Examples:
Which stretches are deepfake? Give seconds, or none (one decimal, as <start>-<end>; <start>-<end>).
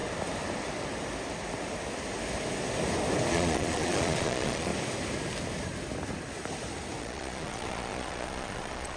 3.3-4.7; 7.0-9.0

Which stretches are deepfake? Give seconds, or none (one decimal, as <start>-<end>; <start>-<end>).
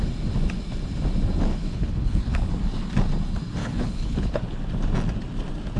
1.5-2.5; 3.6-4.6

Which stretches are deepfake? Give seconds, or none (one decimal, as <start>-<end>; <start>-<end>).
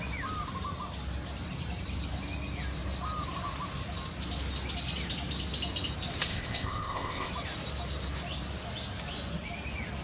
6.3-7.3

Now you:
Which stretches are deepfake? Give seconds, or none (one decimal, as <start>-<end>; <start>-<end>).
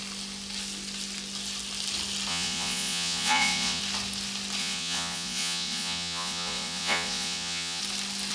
2.3-3.8; 4.6-7.8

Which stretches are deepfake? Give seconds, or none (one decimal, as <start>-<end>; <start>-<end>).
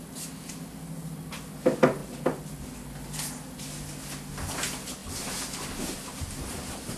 5.0-6.4